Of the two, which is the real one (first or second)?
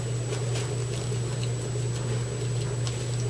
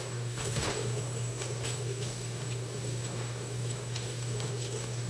first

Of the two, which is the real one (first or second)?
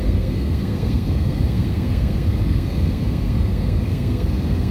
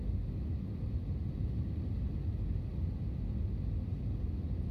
second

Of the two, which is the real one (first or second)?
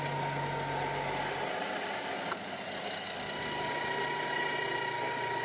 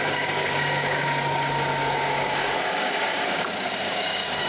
first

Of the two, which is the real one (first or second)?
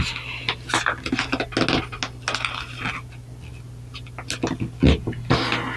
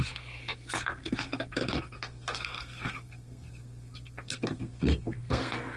first